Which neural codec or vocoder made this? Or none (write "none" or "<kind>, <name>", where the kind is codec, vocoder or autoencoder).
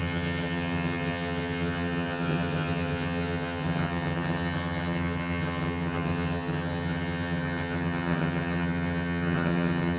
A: vocoder, HiFi-GAN